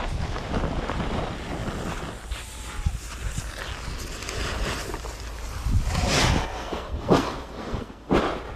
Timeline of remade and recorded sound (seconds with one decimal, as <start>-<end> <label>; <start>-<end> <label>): 0.0-6.4 recorded; 6.4-8.1 remade; 8.1-8.6 recorded